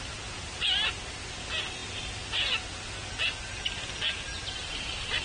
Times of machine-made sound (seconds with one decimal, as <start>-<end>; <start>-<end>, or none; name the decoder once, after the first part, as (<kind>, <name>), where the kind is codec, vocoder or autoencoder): none